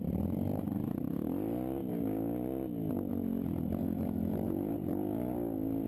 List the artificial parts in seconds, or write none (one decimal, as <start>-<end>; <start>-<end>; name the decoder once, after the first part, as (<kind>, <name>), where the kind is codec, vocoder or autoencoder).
none